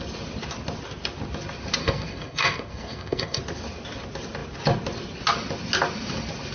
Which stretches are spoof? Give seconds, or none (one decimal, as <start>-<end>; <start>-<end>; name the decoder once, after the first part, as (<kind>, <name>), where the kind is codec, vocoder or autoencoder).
1.8-3.4 (codec, SNAC)